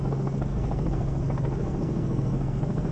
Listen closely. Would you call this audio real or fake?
fake